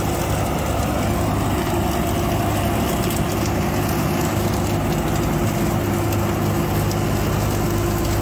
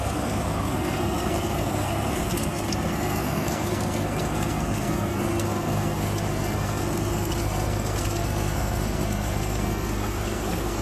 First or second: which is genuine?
first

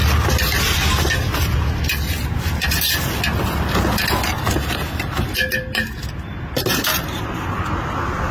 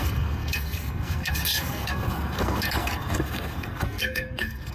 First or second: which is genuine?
first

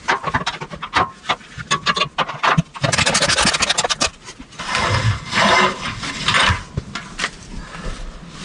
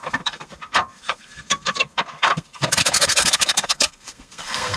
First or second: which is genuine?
first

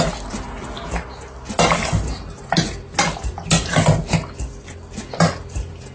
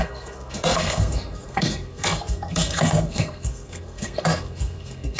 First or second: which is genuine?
first